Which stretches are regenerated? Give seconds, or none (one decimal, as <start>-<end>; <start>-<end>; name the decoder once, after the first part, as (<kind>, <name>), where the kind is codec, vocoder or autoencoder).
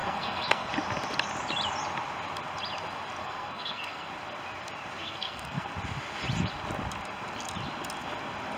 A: 0.0-0.7 (codec, SNAC); 3.2-4.1; 5.0-5.7